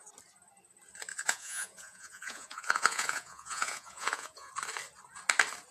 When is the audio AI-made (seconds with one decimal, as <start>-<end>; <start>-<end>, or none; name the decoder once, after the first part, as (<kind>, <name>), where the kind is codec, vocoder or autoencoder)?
1.1-4.5 (vocoder, Vocos)